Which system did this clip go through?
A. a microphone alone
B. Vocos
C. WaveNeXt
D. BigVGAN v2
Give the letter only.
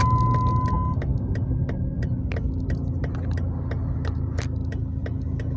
A